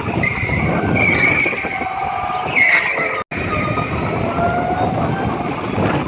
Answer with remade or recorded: recorded